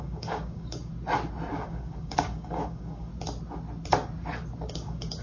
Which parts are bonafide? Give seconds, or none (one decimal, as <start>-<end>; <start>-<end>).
0.9-1.5; 3.1-4.7